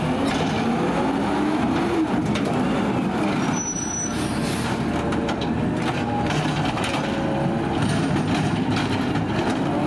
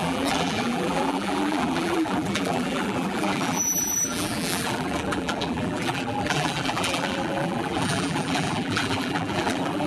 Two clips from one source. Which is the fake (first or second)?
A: second